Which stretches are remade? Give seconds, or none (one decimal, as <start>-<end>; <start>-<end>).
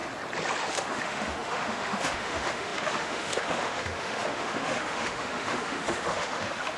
0.7-6.8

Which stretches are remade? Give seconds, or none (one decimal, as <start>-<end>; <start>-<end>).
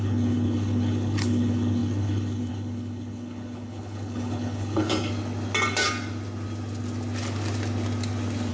0.0-4.9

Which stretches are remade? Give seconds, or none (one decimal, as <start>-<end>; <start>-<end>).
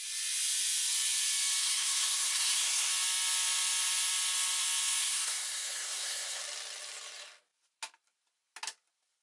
1.6-2.9; 5.0-6.4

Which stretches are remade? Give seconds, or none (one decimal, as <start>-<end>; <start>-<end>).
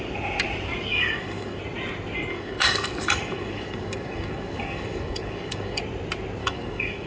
0.9-1.6; 2.3-5.8; 6.4-7.1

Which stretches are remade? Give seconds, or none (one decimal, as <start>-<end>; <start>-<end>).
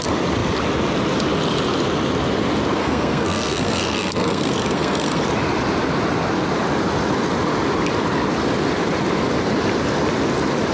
2.8-5.2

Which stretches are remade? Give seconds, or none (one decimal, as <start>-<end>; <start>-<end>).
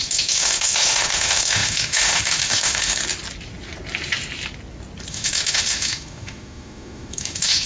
0.0-3.0; 5.1-7.7